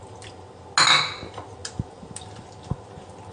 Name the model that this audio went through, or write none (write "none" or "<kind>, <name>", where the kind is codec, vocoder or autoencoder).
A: none